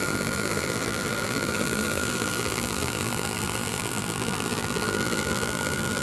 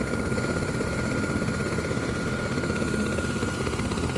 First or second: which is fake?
first